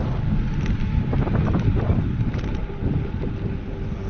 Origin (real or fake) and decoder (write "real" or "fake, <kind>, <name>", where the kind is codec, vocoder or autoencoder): real